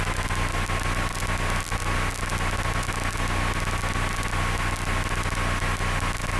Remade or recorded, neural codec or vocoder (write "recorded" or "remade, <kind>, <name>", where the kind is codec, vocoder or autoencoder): recorded